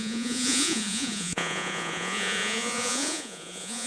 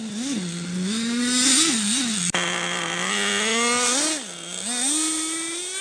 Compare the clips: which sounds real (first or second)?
second